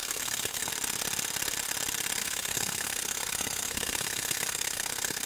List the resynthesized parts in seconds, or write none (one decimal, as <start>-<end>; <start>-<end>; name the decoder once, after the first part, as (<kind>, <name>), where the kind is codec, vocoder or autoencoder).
0.0-0.7 (codec, SNAC); 2.2-5.3